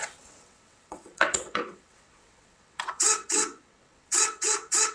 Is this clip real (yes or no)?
no